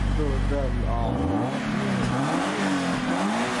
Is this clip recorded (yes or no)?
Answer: yes